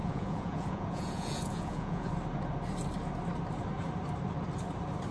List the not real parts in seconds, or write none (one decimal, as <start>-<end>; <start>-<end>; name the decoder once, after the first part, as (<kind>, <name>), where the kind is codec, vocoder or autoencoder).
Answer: 0.0-2.1 (vocoder, Vocos)